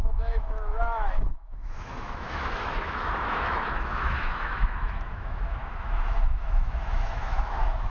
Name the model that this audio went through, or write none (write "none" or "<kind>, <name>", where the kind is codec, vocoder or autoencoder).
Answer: autoencoder, DAC-VAE